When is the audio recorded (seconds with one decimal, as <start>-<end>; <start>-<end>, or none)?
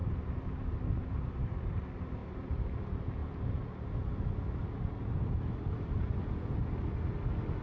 1.7-2.2; 2.8-7.6